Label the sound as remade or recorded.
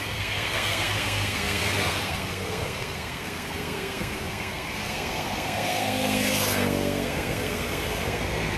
remade